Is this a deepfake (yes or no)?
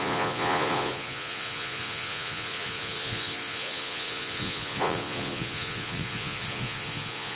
yes